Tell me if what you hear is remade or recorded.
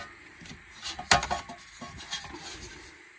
recorded